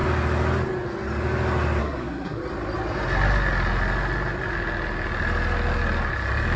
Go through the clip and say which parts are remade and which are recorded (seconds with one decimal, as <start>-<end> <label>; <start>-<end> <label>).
0.0-1.8 recorded; 1.8-2.4 remade; 2.4-6.6 recorded